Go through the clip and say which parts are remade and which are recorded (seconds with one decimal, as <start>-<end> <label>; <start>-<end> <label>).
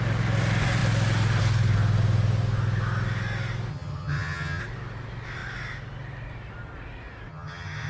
0.0-3.7 recorded; 3.7-4.6 remade; 4.6-7.3 recorded; 7.3-7.9 remade